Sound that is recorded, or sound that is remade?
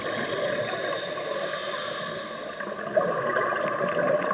recorded